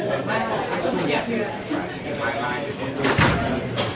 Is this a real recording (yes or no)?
yes